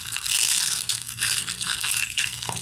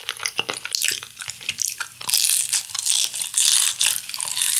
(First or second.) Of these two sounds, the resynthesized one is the first